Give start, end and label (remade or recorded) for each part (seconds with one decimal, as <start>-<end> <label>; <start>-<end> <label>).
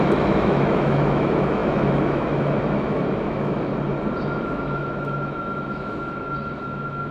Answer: 0.0-3.7 remade; 3.7-4.2 recorded; 4.2-7.1 remade